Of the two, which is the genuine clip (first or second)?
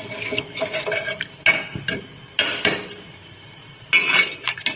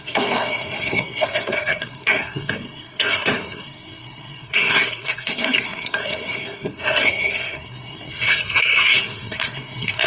first